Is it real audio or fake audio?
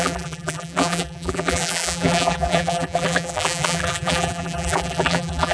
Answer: fake